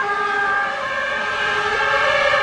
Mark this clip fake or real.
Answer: fake